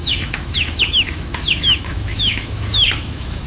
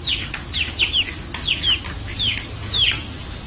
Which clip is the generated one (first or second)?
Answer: first